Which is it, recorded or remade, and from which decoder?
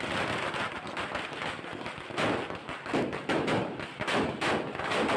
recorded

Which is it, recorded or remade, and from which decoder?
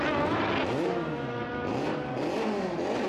recorded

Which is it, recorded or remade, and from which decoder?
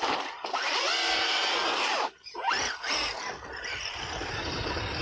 recorded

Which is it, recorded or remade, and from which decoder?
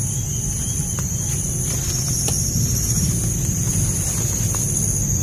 recorded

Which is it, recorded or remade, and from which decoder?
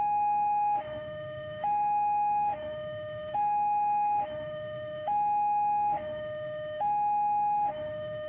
remade, autoencoder, DAC-VAE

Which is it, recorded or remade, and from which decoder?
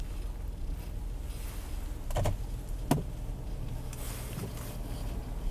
recorded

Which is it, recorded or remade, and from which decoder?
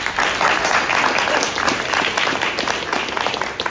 recorded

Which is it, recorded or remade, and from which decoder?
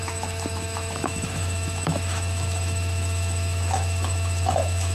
remade, autoencoder, DAC-VAE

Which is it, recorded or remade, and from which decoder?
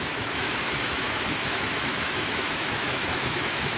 remade, autoencoder, DAC-VAE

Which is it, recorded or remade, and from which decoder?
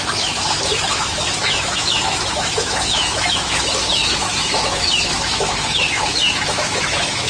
remade, autoencoder, DAC-VAE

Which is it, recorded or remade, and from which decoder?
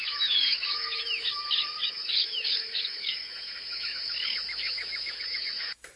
remade, autoencoder, DAC-VAE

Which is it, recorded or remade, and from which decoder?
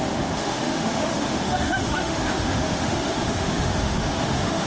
remade, autoencoder, DAC-VAE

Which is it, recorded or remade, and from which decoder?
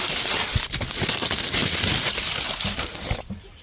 recorded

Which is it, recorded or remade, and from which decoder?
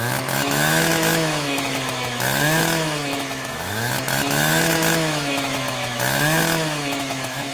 remade, autoencoder, DAC-VAE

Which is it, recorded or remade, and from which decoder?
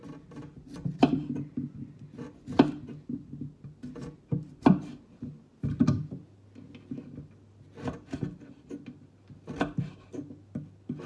recorded